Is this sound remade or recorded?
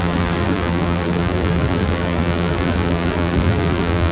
remade